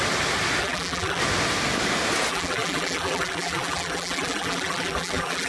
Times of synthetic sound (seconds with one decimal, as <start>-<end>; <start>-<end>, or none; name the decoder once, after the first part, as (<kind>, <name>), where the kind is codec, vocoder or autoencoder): 0.6-1.2 (vocoder, BigVGAN v2); 2.3-5.5